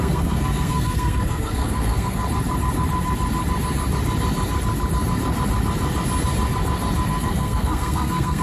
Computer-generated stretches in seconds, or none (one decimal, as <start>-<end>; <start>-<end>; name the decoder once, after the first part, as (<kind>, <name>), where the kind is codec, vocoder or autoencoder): 0.0-2.2 (codec, SNAC); 7.1-8.4